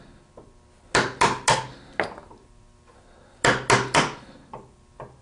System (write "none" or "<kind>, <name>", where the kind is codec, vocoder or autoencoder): none